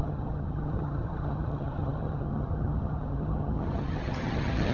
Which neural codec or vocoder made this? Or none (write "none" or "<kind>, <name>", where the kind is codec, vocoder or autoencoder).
vocoder, HiFi-GAN